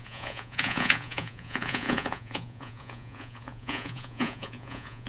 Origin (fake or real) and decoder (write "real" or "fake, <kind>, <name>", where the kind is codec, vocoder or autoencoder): fake, vocoder, Vocos